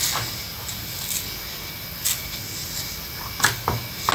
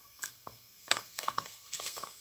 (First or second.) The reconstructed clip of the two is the second